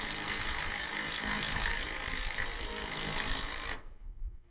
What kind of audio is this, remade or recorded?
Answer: remade